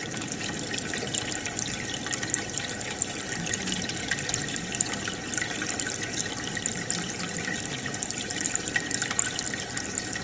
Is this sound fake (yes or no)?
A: no